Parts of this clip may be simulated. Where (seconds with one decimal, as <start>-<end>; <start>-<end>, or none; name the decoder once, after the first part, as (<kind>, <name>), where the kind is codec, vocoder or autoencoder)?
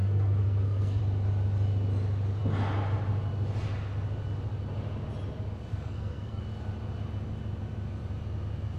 0.0-1.0 (codec, SNAC); 5.7-6.4